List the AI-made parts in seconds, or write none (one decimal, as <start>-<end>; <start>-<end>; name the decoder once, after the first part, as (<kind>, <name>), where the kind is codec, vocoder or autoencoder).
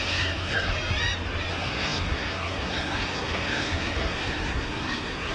0.0-0.7 (codec, SNAC); 1.5-5.3